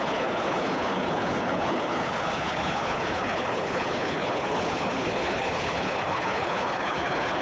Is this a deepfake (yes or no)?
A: yes